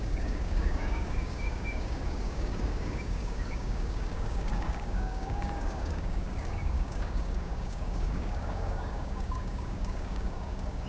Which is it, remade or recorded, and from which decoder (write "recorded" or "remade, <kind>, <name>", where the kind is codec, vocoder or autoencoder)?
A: remade, codec, DAC